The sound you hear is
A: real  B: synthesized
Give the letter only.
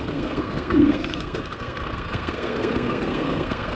B